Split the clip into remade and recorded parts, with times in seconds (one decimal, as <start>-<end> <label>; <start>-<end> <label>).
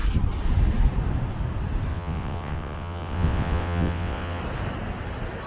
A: 0.0-1.9 recorded; 1.9-4.4 remade; 4.4-5.5 recorded